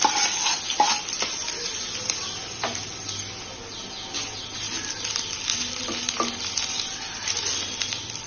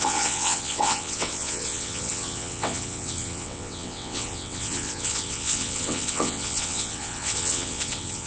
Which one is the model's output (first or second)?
second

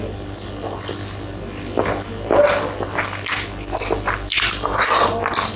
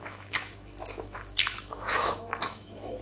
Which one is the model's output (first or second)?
second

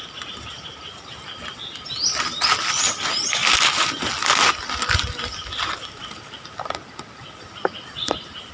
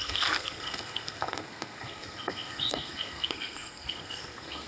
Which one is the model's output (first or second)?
second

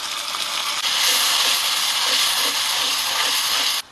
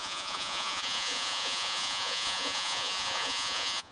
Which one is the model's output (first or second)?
second